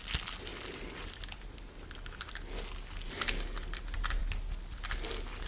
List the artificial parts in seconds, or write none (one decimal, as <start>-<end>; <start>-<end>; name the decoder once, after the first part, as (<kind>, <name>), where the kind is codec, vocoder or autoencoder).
none